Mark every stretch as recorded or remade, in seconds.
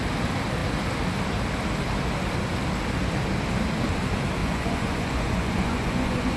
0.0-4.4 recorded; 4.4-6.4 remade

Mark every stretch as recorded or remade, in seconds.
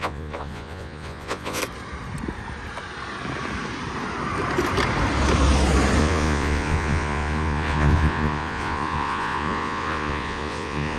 0.0-1.6 remade; 1.6-6.0 recorded; 6.0-11.0 remade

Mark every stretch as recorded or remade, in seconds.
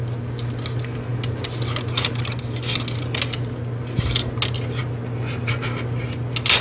0.0-6.6 recorded